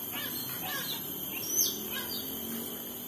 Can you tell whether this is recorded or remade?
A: recorded